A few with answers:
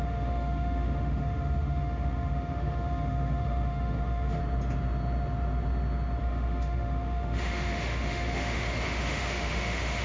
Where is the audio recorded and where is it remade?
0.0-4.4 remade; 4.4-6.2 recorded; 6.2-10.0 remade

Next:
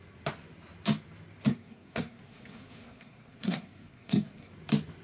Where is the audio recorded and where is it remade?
0.0-1.5 recorded; 1.5-4.5 remade; 4.5-5.0 recorded

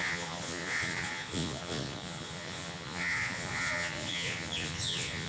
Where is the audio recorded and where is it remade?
0.0-5.3 remade

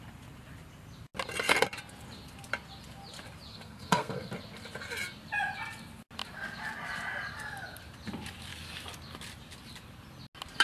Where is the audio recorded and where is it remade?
0.0-3.5 recorded; 3.5-4.3 remade; 4.3-10.6 recorded